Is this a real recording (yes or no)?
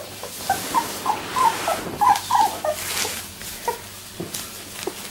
yes